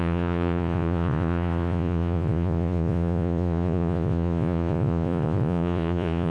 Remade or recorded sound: remade